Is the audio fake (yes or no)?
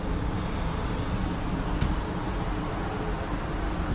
no